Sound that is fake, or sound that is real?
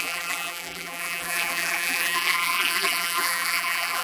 fake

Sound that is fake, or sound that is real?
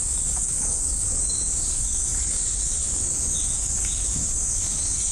fake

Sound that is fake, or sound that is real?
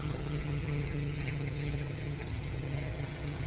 fake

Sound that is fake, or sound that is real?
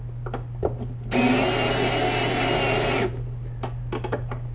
real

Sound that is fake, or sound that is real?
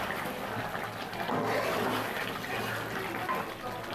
real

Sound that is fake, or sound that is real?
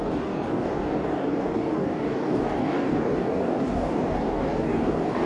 fake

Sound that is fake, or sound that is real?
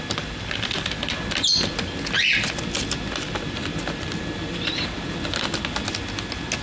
real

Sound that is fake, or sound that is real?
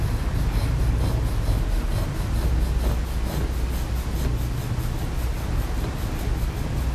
real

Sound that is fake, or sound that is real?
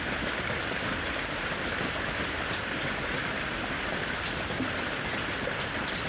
real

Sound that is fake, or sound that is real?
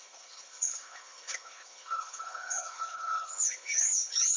fake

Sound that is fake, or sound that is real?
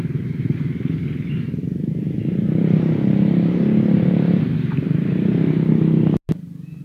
fake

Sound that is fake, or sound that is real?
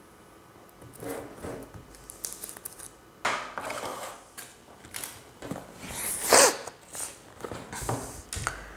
real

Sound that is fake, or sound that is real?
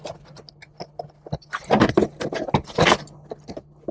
real